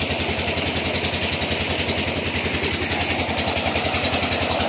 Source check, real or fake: real